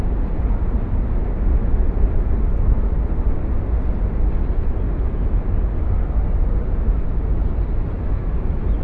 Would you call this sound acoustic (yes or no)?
yes